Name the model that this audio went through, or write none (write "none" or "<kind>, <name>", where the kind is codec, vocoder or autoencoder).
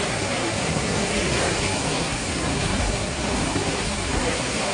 codec, SNAC